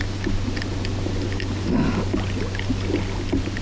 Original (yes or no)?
yes